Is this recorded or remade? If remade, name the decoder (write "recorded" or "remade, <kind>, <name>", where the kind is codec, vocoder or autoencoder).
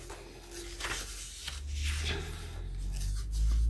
recorded